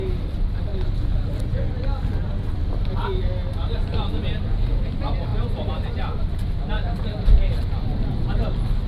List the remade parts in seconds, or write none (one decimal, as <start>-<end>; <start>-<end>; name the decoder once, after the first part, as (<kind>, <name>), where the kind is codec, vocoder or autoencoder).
0.7-1.3 (vocoder, BigVGAN v2); 2.2-2.7